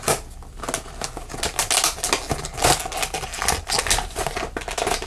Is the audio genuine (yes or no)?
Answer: yes